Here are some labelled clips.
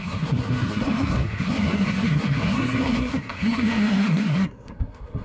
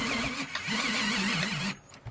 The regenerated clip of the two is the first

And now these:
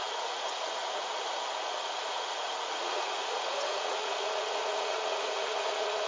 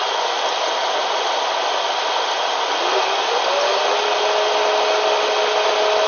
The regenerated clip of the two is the first